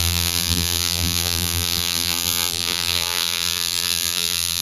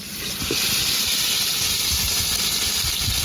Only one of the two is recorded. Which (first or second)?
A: second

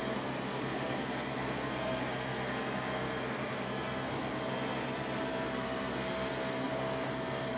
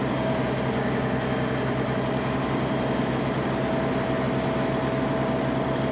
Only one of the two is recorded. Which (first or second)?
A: second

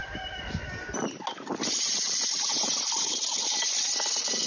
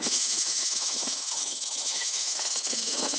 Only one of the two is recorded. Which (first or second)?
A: first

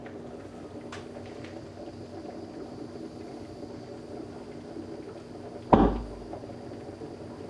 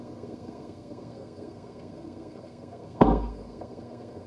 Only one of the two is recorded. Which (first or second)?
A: first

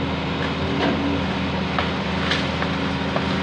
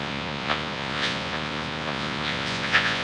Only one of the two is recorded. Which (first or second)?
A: first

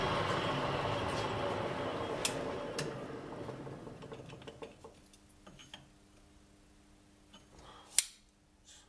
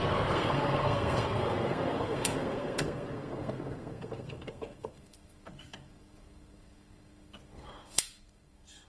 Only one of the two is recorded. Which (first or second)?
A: first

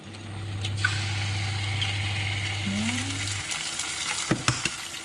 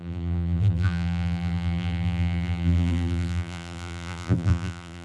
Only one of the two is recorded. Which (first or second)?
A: first